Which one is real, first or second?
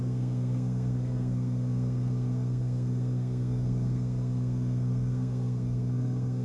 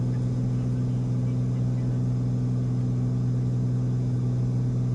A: second